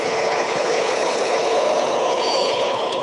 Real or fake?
fake